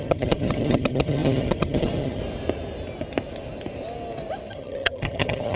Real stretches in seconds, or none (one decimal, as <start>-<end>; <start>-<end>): 2.2-4.5